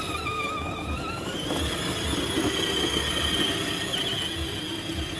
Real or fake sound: real